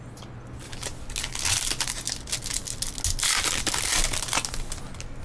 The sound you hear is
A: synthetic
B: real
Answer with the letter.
B